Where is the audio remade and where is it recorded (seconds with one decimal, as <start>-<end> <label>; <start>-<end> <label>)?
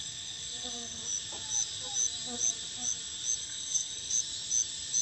0.0-1.0 remade; 1.0-3.4 recorded; 3.4-4.1 remade; 4.1-5.0 recorded